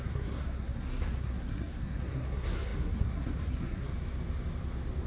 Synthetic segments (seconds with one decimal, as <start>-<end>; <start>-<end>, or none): 0.0-3.9